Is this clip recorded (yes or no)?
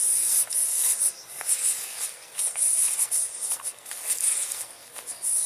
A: no